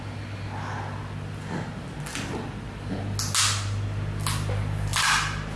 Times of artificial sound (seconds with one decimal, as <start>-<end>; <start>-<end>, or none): 4.9-5.6